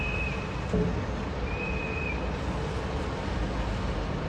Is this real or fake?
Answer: real